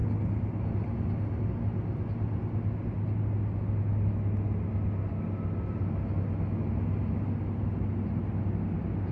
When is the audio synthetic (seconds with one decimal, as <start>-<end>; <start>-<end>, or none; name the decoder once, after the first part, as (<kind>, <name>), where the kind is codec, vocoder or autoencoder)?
none